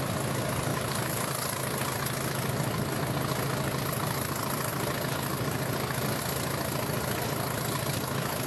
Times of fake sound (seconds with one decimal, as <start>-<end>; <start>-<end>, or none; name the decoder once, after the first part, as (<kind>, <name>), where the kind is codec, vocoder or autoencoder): 0.7-1.2 (vocoder, BigVGAN v2)